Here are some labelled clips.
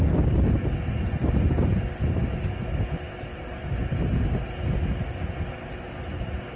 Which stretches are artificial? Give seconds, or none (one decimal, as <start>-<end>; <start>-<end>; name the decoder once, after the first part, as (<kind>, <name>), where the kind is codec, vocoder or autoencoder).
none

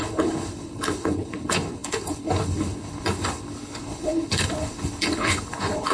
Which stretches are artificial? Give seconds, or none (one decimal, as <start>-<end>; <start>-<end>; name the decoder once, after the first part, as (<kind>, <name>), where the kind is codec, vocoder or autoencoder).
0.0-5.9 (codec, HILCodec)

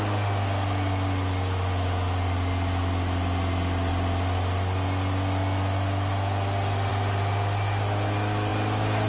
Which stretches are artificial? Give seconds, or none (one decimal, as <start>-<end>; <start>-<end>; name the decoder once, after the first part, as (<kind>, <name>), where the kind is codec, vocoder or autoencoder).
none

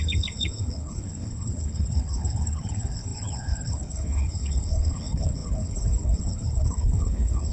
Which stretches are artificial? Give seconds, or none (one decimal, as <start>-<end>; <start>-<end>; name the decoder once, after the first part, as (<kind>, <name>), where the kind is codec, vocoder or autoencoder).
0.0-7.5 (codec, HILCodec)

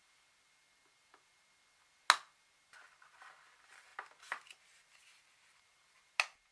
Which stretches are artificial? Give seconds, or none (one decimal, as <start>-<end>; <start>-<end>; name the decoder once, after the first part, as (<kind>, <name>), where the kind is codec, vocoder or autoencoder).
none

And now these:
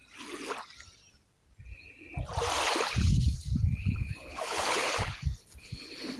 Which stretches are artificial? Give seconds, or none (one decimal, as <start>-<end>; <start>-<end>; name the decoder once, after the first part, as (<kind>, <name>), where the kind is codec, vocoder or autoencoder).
3.0-6.2 (codec, HILCodec)

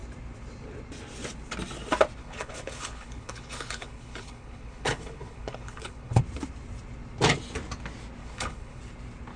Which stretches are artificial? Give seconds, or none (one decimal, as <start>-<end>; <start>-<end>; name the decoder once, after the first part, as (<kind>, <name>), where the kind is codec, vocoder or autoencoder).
2.2-6.2 (codec, HILCodec); 8.2-8.8